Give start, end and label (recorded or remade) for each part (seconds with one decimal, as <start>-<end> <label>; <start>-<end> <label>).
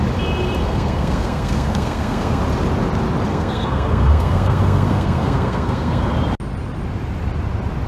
0.0-0.6 recorded; 0.6-2.4 remade; 2.4-3.3 recorded; 3.3-6.1 remade; 6.1-7.9 recorded